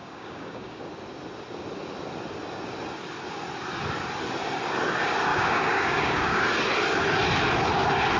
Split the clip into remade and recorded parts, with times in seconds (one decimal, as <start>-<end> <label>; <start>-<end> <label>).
0.0-0.8 remade; 0.8-5.3 recorded; 5.3-6.4 remade; 6.4-8.2 recorded